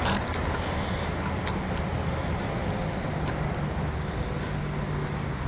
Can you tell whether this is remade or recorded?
recorded